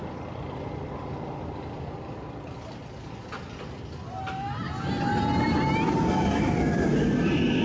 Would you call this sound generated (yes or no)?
no